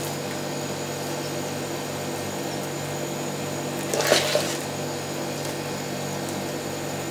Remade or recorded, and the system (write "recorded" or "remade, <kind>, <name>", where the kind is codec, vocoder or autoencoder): recorded